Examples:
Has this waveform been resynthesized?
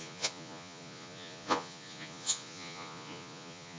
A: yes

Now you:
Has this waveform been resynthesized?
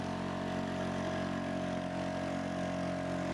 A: no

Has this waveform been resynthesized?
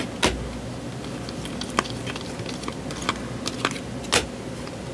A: no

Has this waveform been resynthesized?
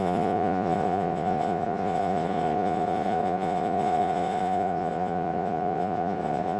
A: yes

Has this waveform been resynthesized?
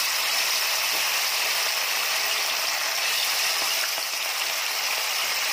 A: no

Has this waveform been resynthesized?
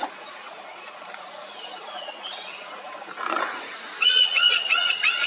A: yes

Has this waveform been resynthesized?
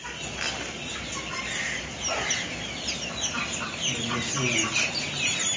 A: no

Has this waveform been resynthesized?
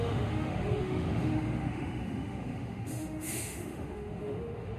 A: yes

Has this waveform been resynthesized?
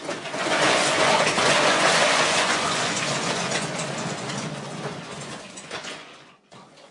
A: yes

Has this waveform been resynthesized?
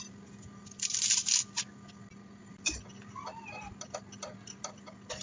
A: no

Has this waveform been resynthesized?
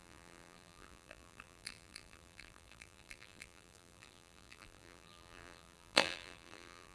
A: yes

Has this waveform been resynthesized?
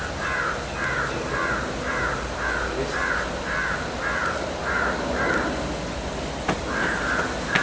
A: no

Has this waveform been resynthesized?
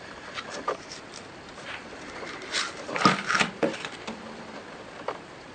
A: yes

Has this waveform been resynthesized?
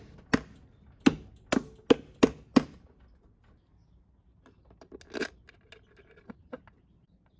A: no